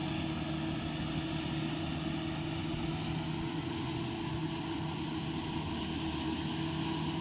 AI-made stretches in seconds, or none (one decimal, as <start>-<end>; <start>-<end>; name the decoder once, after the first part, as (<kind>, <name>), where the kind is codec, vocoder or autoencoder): none